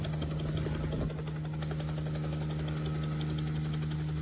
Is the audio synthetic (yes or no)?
no